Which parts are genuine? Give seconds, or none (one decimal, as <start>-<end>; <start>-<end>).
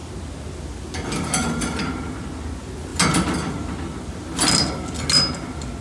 0.0-5.8